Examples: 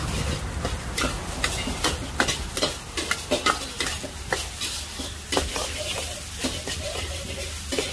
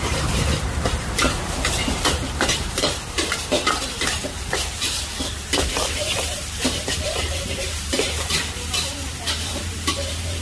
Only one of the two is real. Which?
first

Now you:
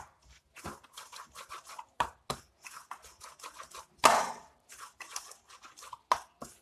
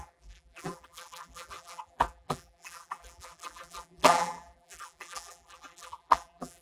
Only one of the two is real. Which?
first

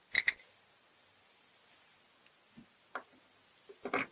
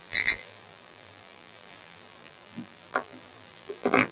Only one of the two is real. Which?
first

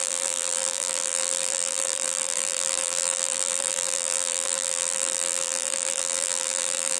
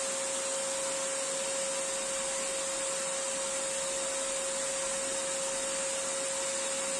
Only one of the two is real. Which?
second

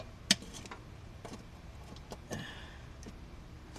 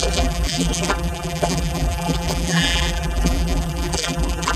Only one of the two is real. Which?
first